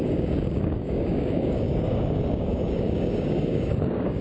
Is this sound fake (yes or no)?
yes